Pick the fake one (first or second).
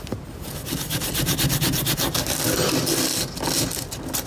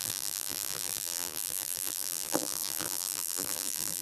second